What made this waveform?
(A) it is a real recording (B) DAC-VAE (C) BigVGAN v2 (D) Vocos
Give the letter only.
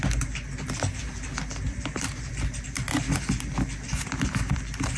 A